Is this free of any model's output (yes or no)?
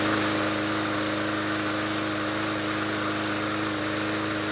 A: yes